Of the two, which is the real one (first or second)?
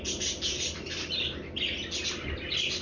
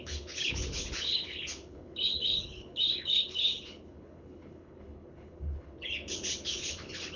first